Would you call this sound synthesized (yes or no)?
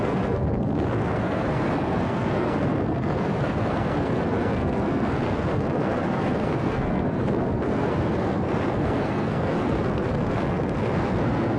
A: yes